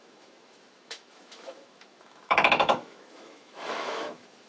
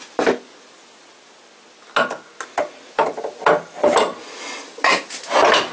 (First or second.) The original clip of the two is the second